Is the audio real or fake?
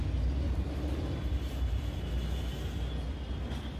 real